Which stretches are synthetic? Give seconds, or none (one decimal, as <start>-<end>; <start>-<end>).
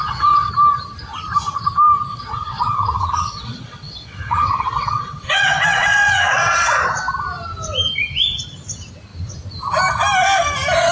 0.0-0.5; 2.1-6.8